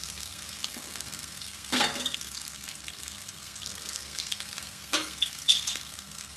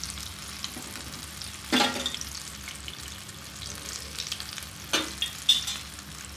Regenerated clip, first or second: first